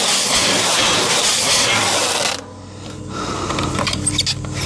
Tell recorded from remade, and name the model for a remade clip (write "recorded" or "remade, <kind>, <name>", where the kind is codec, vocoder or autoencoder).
recorded